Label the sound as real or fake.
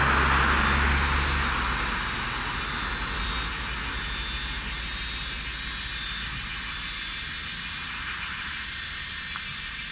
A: real